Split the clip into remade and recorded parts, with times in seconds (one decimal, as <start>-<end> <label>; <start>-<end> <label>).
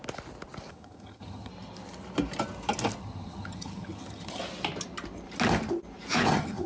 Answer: 0.0-0.7 recorded; 0.7-1.5 remade; 1.5-3.0 recorded; 3.0-4.4 remade; 4.4-6.3 recorded; 6.3-6.7 remade